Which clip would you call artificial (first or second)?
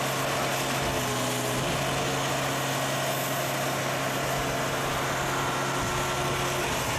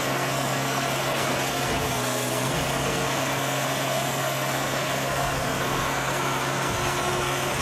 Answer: second